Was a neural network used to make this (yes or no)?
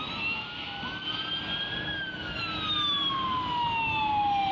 no